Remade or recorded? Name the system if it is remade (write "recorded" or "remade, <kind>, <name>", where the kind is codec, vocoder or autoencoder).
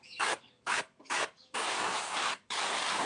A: remade, codec, DAC